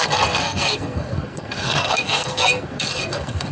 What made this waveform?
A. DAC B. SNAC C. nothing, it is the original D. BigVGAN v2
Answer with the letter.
B